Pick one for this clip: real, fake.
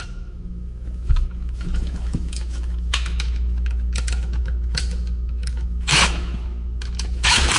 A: fake